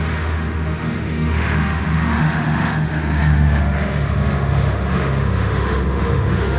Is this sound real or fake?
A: fake